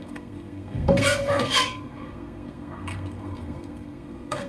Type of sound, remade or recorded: remade